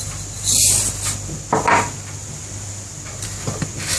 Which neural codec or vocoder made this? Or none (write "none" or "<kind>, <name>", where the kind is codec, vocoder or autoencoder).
none